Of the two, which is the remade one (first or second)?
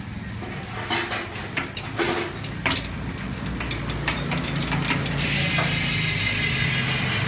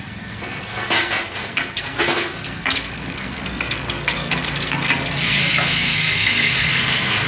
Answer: second